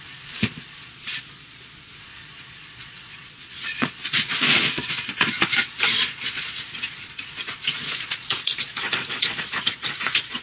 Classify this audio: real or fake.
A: fake